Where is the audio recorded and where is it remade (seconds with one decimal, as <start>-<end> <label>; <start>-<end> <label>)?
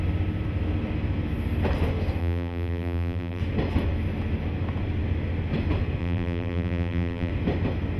0.0-2.2 recorded; 2.2-3.4 remade; 3.4-6.0 recorded; 6.0-7.3 remade; 7.3-8.0 recorded